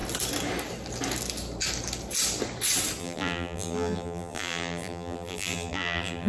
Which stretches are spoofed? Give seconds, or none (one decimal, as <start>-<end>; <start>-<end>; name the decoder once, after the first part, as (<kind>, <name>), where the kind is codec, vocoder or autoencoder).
3.0-6.3 (vocoder, BigVGAN v2)